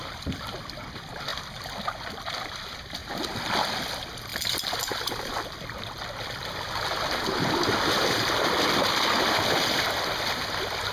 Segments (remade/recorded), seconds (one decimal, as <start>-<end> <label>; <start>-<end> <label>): 0.0-1.3 remade; 1.3-2.4 recorded; 2.4-3.0 remade; 3.0-3.8 recorded; 3.8-4.3 remade; 4.3-8.1 recorded; 8.1-10.9 remade